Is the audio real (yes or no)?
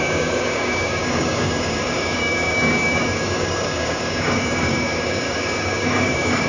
no